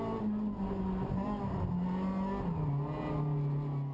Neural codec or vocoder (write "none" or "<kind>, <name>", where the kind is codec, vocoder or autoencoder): none